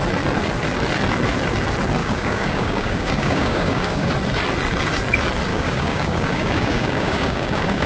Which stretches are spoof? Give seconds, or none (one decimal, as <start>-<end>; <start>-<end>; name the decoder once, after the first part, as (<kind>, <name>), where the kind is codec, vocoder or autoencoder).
2.0-4.1 (codec, DAC); 5.5-7.9